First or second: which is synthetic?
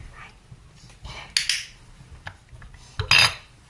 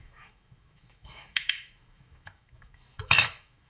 second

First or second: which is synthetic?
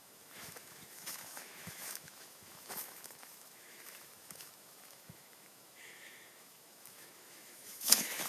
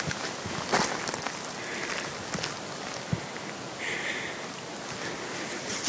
first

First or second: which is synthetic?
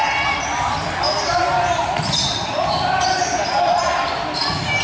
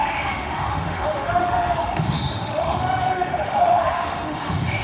second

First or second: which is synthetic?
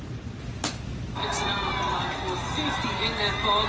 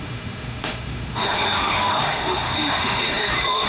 second